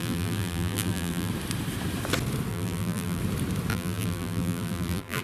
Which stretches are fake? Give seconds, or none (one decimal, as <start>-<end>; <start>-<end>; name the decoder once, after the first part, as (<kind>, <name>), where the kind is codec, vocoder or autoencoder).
0.0-1.3 (vocoder, BigVGAN v2); 2.5-3.2; 3.7-5.2